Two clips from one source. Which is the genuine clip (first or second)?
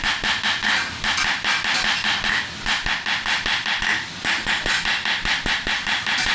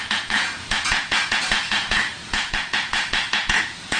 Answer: first